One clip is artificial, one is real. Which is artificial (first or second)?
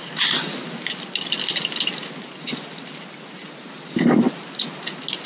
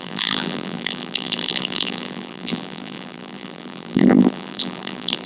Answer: second